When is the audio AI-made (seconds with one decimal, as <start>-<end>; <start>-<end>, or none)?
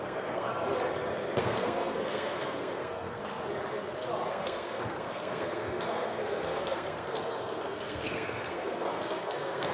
0.0-0.5; 1.4-3.2; 4.3-9.7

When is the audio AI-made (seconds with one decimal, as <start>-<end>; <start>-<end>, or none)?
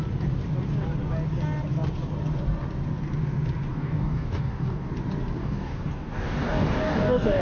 3.7-4.9; 5.4-7.4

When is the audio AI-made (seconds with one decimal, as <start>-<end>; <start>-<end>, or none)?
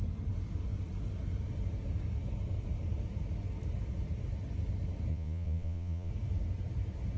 5.1-6.1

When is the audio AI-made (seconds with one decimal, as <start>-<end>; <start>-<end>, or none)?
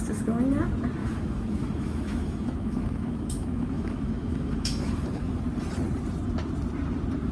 1.0-5.4